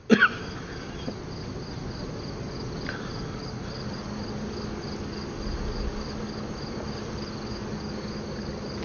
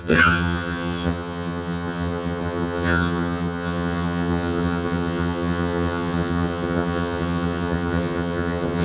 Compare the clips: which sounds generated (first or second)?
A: second